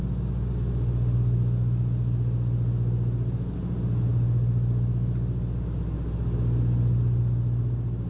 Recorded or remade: recorded